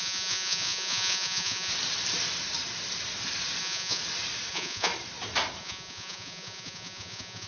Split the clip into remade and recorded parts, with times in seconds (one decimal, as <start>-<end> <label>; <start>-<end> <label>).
0.0-1.7 remade; 1.7-3.6 recorded; 3.6-4.0 remade; 4.0-4.5 recorded; 4.5-4.9 remade; 4.9-5.6 recorded; 5.6-7.5 remade